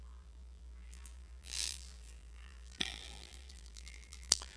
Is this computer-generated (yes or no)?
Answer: yes